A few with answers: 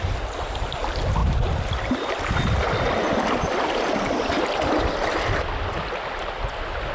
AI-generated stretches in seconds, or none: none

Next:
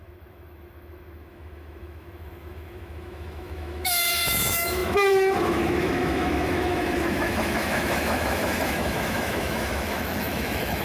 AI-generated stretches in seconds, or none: 0.0-10.8 (autoencoder, DAC-VAE)